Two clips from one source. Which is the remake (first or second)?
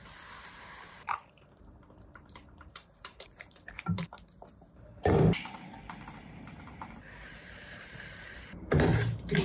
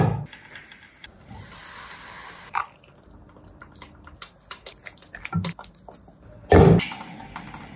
first